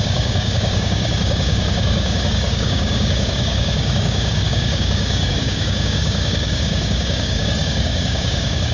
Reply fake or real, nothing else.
fake